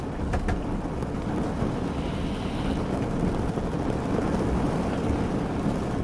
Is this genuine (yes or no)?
yes